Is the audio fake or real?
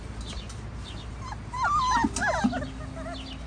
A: real